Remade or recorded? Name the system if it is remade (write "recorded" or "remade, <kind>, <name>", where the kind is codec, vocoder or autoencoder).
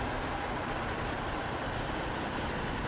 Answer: remade, vocoder, BigVGAN v2